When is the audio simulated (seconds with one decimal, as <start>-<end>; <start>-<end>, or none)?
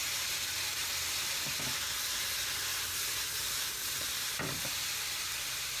0.9-1.8; 2.7-5.2